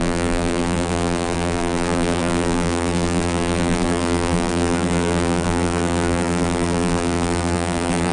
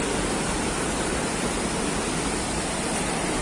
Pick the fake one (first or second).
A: first